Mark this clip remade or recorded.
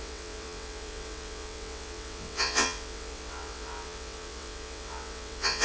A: remade